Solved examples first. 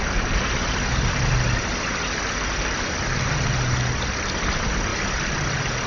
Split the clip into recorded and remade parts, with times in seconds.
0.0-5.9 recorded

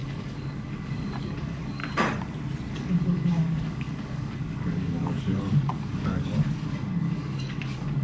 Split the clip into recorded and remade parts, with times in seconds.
0.0-1.8 remade; 1.8-2.7 recorded; 2.7-8.0 remade

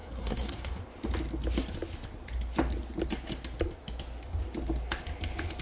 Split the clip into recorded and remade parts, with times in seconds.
0.0-0.8 remade; 0.8-5.6 recorded